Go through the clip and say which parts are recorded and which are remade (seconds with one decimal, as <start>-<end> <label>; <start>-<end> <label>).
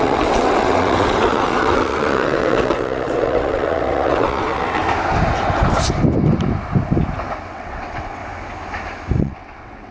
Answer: 0.0-4.8 remade; 4.8-7.5 recorded; 7.5-8.2 remade; 8.2-9.2 recorded; 9.2-9.9 remade